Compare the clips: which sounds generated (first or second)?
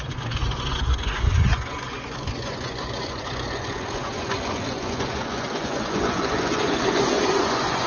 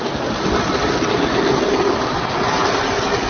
first